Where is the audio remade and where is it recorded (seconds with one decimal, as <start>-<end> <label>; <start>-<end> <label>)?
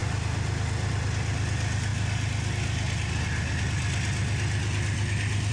0.0-5.5 recorded